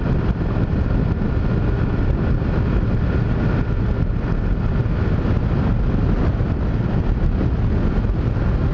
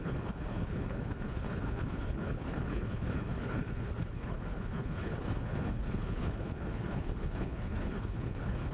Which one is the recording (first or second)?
first